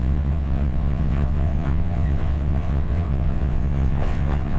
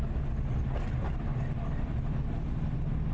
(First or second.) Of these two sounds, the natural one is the second